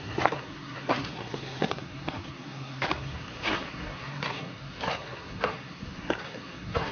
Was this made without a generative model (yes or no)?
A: no